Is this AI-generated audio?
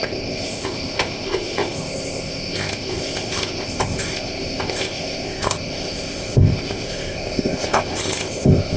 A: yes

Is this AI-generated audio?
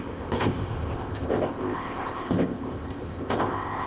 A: yes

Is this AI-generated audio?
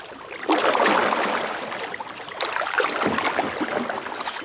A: no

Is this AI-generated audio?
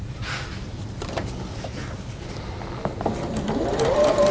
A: no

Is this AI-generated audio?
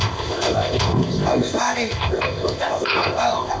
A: yes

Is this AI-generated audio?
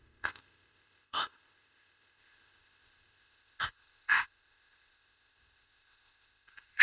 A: yes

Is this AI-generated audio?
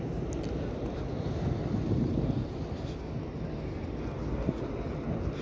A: no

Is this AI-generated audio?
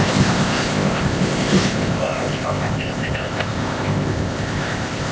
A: yes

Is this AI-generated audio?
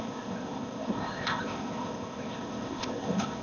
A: yes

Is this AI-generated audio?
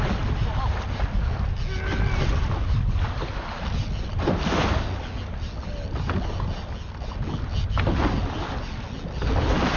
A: no